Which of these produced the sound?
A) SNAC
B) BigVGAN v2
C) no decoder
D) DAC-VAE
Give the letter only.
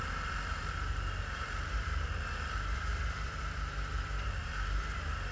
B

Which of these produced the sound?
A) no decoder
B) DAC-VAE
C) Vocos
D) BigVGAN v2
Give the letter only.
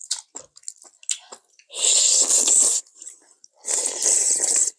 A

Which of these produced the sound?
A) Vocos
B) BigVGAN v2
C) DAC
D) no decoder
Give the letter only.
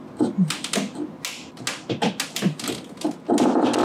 D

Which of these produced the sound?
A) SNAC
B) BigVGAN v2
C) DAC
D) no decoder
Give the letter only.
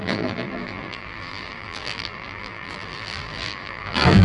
B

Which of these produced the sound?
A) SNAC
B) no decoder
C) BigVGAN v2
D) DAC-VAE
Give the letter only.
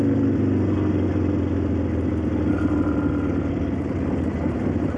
B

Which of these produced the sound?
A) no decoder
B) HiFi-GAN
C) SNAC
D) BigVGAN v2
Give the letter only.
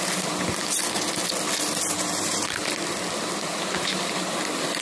A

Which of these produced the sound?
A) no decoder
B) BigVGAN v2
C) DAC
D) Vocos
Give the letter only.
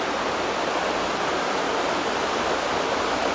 A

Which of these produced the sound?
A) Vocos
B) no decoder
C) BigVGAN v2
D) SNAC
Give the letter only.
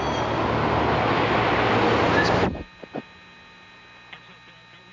B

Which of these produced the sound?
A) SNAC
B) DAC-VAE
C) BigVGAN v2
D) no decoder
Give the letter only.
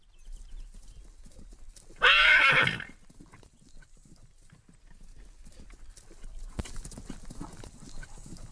D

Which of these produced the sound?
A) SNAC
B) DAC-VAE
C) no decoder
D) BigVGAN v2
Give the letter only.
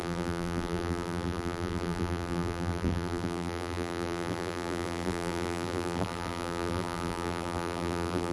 D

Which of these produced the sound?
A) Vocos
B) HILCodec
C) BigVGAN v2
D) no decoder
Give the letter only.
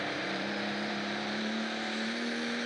C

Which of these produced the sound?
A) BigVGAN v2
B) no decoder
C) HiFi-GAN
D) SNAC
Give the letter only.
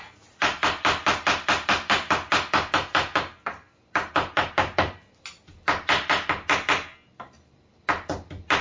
B